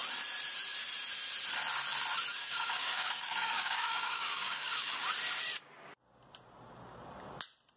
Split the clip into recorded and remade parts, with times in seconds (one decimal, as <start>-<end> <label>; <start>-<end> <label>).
0.0-2.3 recorded; 2.3-5.0 remade; 5.0-7.8 recorded